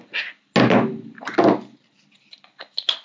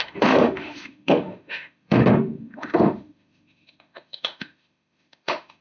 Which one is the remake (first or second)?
second